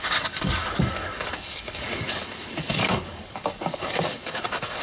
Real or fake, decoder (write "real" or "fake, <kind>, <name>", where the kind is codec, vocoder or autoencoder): fake, codec, DAC